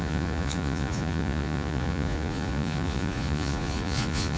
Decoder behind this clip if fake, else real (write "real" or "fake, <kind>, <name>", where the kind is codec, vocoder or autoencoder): fake, vocoder, Vocos